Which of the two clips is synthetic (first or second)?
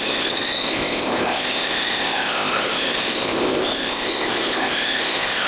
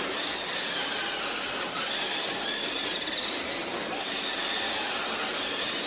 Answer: first